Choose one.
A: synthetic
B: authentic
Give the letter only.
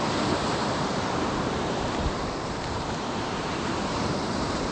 A